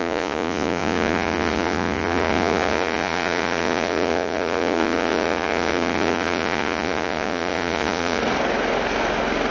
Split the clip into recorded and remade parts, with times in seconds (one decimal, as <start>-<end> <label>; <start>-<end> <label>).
0.0-8.2 remade; 8.2-9.5 recorded

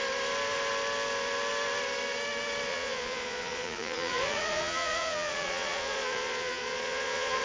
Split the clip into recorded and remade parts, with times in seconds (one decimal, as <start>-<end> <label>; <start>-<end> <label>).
0.0-2.7 recorded; 2.7-7.4 remade

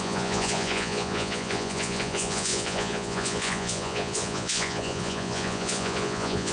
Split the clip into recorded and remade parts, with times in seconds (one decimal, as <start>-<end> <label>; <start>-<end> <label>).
0.0-6.5 remade

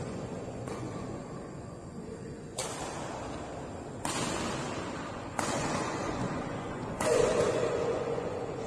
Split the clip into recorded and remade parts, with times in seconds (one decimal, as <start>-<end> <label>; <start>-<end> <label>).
0.0-2.6 remade; 2.6-5.1 recorded; 5.1-8.7 remade

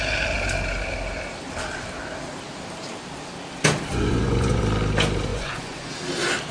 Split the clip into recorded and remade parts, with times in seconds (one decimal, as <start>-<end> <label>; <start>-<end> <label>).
0.0-3.9 recorded; 3.9-4.6 remade; 4.6-5.3 recorded; 5.3-5.9 remade; 5.9-6.5 recorded

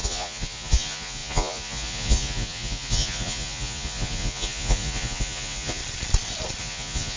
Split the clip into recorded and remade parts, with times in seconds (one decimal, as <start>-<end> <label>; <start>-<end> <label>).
0.0-5.8 remade; 5.8-6.6 recorded; 6.6-7.2 remade